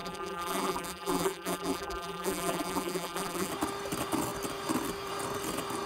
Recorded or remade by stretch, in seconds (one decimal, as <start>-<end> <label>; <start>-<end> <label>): 0.0-3.5 remade; 3.5-5.9 recorded